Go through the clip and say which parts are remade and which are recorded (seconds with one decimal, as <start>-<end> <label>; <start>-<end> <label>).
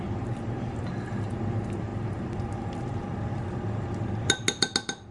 0.0-5.1 recorded